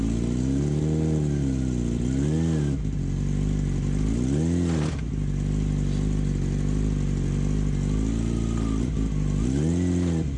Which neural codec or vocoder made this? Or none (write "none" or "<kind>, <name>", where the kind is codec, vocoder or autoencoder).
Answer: none